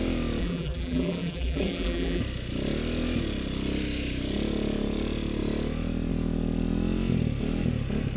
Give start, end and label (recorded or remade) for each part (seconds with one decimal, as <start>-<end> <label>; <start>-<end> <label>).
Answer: 0.0-0.4 recorded; 0.4-2.2 remade; 2.2-8.2 recorded